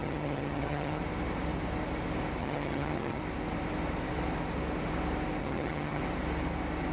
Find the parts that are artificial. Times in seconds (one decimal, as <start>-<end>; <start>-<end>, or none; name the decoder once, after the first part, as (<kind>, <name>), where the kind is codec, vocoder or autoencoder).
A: 0.0-1.0 (vocoder, HiFi-GAN); 2.4-3.2; 5.4-6.0